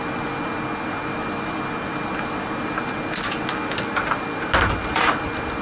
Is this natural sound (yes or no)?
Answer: yes